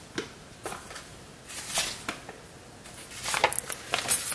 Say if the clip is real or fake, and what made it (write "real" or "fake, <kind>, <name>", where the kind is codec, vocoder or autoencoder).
real